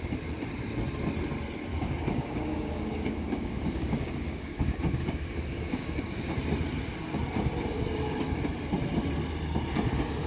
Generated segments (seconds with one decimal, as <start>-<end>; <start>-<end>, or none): 1.7-6.4